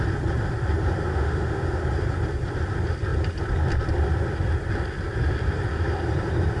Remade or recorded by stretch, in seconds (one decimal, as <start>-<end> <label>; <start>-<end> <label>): 0.0-1.1 recorded; 1.1-1.8 remade; 1.8-6.6 recorded